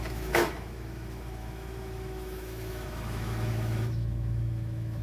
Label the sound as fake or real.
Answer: fake